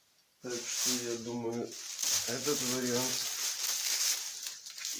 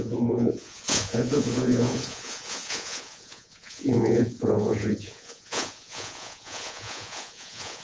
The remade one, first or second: second